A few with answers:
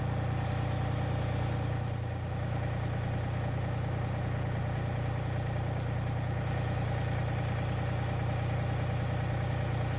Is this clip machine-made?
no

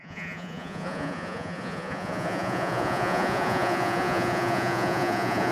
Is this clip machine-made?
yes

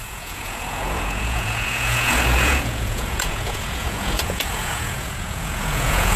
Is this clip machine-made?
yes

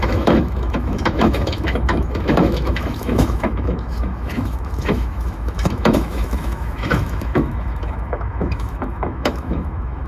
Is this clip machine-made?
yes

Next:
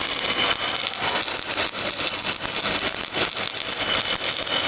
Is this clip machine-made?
no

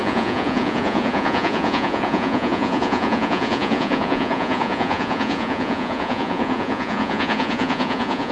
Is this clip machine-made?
yes